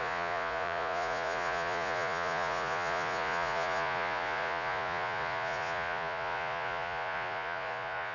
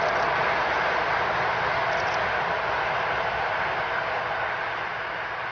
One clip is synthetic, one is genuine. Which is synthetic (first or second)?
first